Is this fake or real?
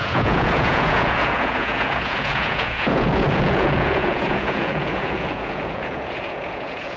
fake